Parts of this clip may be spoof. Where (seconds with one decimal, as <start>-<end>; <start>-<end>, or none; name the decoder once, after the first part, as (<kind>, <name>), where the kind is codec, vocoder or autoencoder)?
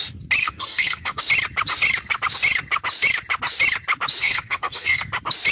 0.4-1.2 (codec, SNAC); 4.2-5.1